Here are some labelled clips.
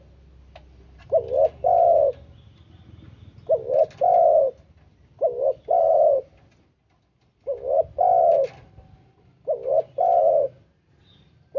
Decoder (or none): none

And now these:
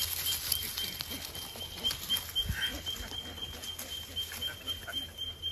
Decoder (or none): none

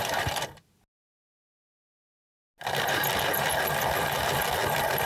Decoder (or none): none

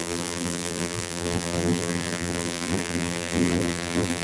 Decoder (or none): vocoder, BigVGAN v2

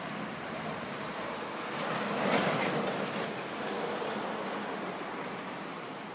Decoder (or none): none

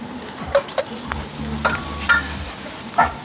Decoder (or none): none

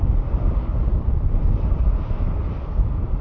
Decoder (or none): none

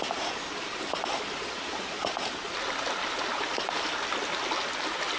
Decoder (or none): none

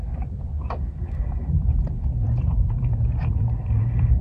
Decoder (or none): vocoder, BigVGAN v2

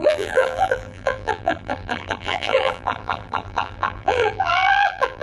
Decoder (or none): vocoder, BigVGAN v2